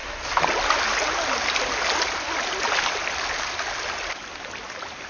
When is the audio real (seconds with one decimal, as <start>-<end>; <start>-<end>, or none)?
0.0-5.1